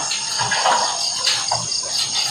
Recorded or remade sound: recorded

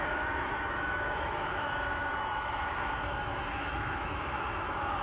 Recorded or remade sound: remade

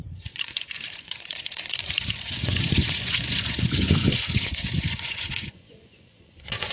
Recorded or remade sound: remade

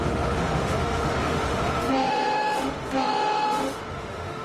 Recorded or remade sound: remade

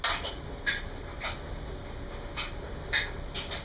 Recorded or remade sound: recorded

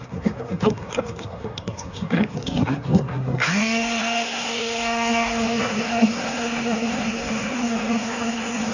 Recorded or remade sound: remade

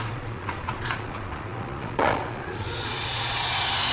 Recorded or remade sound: remade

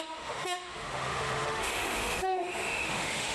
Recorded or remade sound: remade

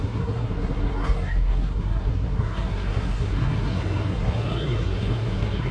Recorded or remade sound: remade